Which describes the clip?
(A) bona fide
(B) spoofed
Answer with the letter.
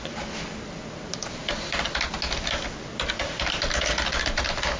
A